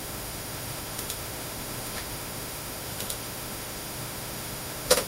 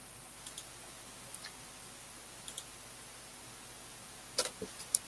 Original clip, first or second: second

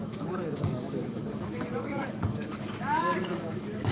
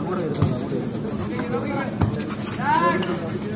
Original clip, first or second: second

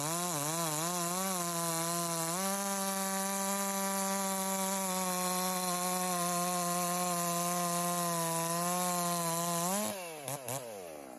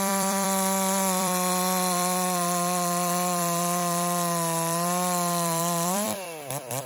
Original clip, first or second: first